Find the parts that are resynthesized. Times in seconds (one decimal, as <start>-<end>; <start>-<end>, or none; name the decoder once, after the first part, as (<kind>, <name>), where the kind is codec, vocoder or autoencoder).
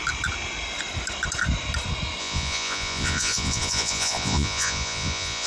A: 2.2-5.5 (vocoder, Vocos)